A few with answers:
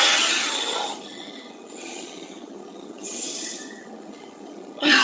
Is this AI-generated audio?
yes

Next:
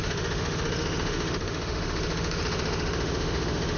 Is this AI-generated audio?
yes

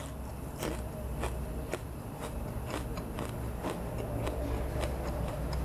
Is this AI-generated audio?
no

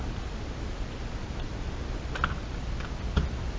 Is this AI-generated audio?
no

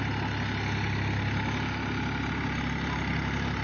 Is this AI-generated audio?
no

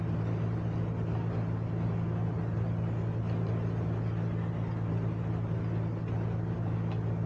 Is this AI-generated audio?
no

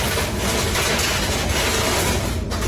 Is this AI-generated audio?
no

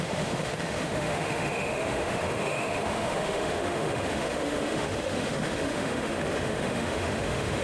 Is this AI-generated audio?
yes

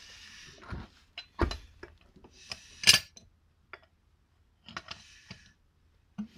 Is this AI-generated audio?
no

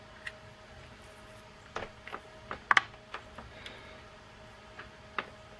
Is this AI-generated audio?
no